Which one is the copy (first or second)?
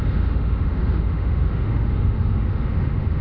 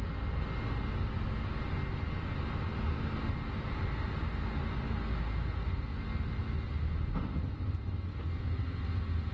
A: first